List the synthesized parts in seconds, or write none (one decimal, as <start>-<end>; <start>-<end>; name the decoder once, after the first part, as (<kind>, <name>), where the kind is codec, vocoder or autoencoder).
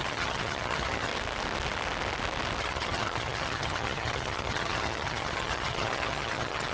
0.0-1.1 (vocoder, HiFi-GAN); 2.6-6.7